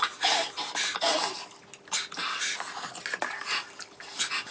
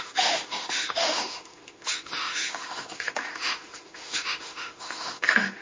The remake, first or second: second